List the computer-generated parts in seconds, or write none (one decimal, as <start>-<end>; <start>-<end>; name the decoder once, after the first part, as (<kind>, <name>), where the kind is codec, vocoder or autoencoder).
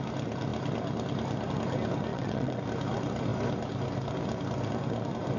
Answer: 2.1-2.6 (vocoder, WaveNeXt)